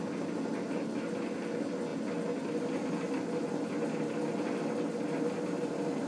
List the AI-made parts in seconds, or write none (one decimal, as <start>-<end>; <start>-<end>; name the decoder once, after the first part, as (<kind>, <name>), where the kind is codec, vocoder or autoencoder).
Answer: none